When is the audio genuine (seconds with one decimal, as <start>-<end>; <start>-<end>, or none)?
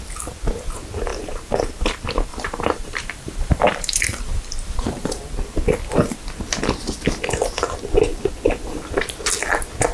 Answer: 0.0-1.1; 1.7-2.3; 5.2-9.9